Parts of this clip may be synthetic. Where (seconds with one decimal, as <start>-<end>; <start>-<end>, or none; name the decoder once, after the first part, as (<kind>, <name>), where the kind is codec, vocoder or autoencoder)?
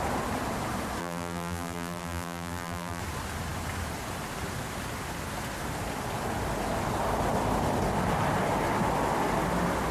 1.0-3.0 (vocoder, BigVGAN v2)